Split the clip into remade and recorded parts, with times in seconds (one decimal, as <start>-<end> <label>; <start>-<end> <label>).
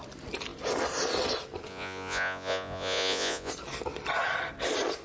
0.0-1.7 recorded; 1.7-3.5 remade; 3.5-5.0 recorded